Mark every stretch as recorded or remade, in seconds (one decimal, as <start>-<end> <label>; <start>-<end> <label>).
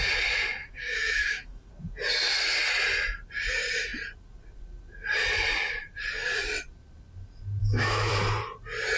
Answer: 0.0-0.6 recorded; 0.6-1.7 remade; 1.7-7.6 recorded; 7.6-8.1 remade; 8.1-9.0 recorded